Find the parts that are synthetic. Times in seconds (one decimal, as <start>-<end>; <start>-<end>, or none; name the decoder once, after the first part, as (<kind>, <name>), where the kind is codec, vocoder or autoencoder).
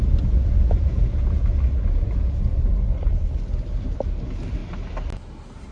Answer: none